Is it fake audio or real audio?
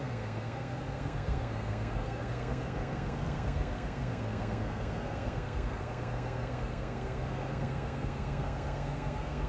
fake